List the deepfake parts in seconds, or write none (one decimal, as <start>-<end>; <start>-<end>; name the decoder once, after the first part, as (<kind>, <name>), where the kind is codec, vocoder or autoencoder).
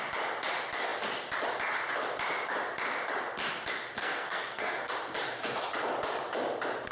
4.0-4.9 (codec, SNAC)